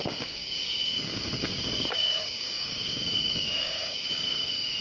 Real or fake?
fake